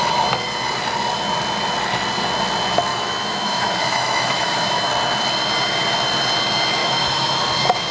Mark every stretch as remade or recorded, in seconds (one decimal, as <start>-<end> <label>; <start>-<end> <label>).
0.0-2.9 recorded; 2.9-4.9 remade; 4.9-6.8 recorded; 6.8-7.4 remade; 7.4-7.9 recorded